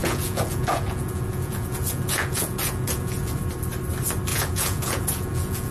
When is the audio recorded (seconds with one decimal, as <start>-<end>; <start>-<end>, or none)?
3.4-4.3